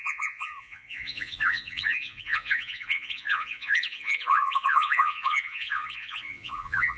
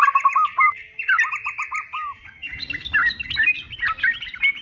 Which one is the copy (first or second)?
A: first